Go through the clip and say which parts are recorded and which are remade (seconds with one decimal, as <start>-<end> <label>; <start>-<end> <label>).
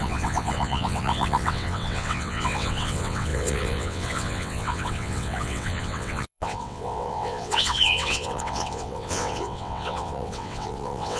0.0-11.2 remade